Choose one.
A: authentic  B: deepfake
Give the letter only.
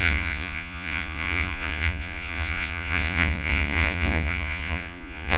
B